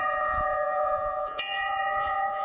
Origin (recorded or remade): remade